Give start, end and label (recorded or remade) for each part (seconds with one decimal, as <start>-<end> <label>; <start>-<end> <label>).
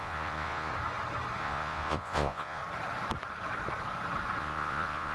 0.0-0.7 remade; 0.7-1.4 recorded; 1.4-2.6 remade; 2.6-4.4 recorded; 4.4-5.1 remade